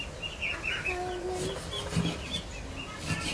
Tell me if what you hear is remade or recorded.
recorded